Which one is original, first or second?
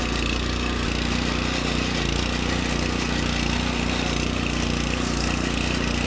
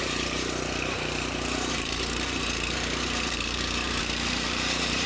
first